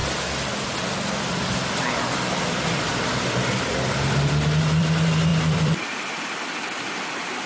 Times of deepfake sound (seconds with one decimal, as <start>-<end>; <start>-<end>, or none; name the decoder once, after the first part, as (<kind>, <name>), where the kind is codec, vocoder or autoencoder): 1.3-7.5 (vocoder, BigVGAN v2)